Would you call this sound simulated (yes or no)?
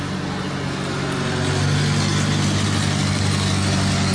no